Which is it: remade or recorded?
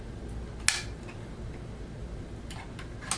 recorded